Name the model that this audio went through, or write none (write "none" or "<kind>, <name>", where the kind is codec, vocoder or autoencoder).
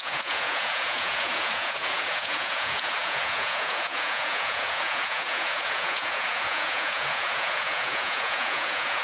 vocoder, Vocos